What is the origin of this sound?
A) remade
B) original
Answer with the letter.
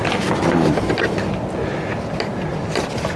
B